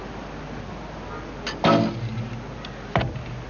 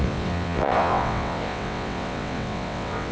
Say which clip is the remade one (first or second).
second